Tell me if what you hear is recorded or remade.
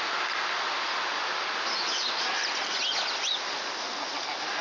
recorded